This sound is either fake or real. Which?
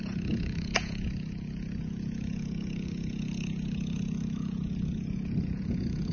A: fake